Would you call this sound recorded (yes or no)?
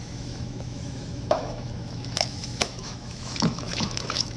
no